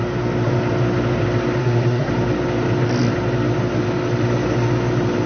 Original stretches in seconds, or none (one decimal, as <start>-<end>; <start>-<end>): 0.0-1.6; 2.1-5.3